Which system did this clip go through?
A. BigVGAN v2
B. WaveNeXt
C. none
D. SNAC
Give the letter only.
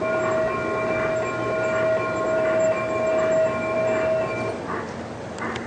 C